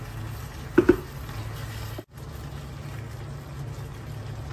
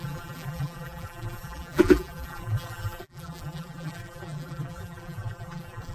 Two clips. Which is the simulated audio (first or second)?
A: second